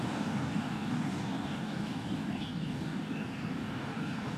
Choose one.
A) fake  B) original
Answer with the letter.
A